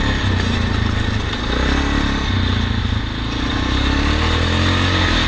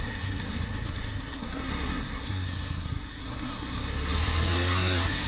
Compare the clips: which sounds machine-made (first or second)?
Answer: second